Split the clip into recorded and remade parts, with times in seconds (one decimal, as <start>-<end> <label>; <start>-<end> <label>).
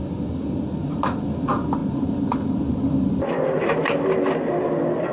0.0-1.8 recorded; 1.8-3.6 remade; 3.6-5.1 recorded